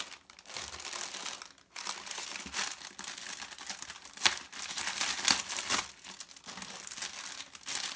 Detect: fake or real real